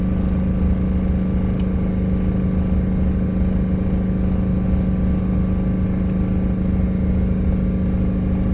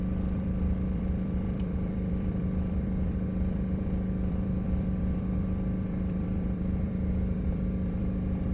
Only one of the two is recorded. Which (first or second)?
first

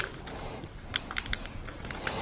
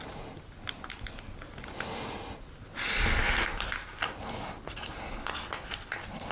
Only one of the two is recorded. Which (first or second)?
second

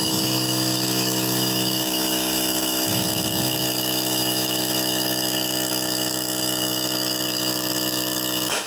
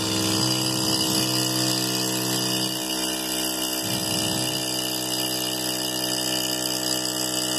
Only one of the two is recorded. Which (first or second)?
second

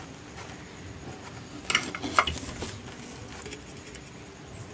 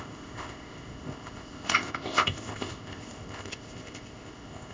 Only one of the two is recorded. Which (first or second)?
first